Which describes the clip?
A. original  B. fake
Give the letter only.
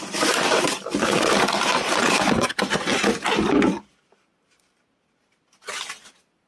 A